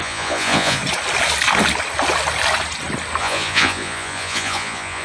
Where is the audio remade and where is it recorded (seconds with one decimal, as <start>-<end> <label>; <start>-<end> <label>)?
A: 0.0-0.8 remade; 0.8-3.2 recorded; 3.2-5.0 remade